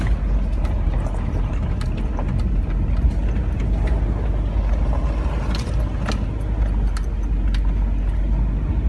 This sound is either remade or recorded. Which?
recorded